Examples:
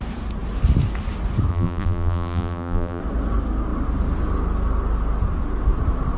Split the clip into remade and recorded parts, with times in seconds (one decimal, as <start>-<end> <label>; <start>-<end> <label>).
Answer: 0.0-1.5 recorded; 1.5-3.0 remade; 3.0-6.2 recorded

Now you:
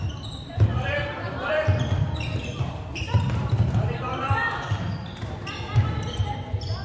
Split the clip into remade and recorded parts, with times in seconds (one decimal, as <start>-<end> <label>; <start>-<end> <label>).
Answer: 0.0-0.7 recorded; 0.7-4.7 remade; 4.7-6.8 recorded

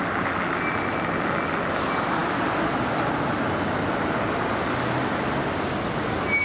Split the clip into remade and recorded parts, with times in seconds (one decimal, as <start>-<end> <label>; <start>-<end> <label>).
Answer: 0.0-6.4 recorded

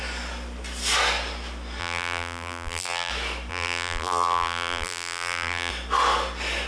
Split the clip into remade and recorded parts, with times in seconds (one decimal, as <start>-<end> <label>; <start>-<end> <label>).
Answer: 0.0-1.8 recorded; 1.8-3.1 remade; 3.1-3.5 recorded; 3.5-5.7 remade; 5.7-6.7 recorded